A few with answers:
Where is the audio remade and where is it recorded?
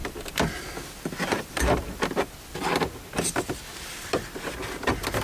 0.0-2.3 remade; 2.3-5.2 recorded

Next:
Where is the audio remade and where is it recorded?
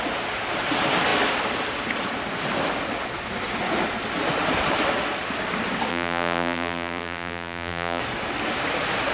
0.0-5.9 recorded; 5.9-8.0 remade; 8.0-9.1 recorded